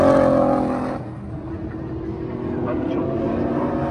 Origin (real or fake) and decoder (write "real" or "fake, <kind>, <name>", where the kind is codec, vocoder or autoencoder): real